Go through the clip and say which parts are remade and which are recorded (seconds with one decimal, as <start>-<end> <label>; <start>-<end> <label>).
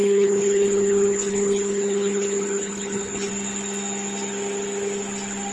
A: 0.0-3.3 remade; 3.3-5.5 recorded